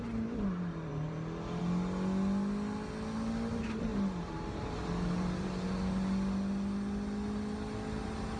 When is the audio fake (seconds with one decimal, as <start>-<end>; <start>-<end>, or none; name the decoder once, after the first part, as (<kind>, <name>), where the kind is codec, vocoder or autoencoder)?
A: 3.9-5.7 (vocoder, BigVGAN v2)